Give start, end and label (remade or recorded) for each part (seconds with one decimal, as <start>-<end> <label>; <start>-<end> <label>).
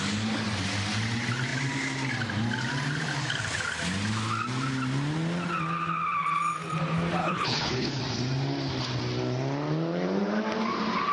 0.0-7.2 recorded; 7.2-8.0 remade; 8.0-11.1 recorded